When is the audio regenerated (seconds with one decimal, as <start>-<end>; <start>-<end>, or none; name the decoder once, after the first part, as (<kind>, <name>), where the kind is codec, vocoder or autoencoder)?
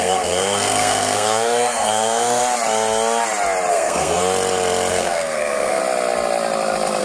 0.0-2.4 (codec, SNAC); 3.7-4.2; 4.9-5.8